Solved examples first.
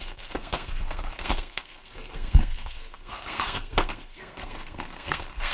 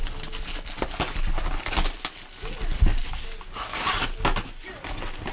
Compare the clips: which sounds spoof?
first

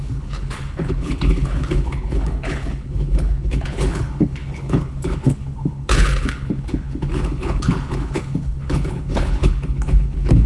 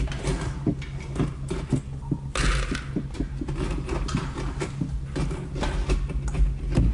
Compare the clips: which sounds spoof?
first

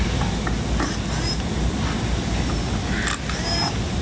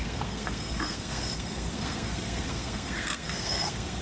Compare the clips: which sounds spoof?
second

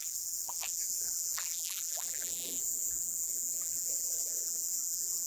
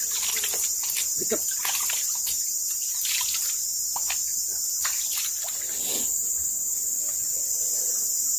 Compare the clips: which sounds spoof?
first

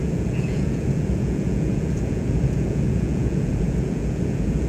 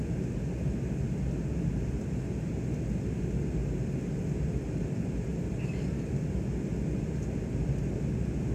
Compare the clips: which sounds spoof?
first